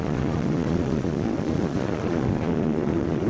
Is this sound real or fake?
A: fake